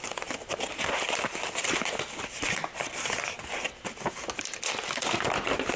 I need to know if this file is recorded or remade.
recorded